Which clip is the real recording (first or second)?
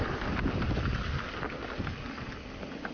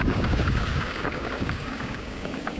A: first